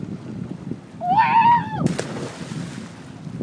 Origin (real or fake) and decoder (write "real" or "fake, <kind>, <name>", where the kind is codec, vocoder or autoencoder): real